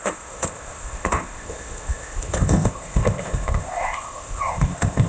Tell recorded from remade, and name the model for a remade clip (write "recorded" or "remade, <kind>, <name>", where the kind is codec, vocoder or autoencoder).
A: remade, codec, ZipCodec